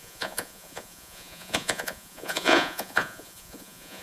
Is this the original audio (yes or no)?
no